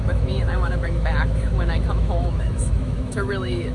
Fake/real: fake